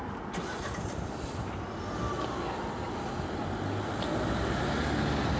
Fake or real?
real